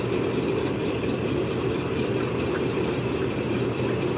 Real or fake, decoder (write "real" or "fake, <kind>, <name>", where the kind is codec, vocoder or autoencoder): real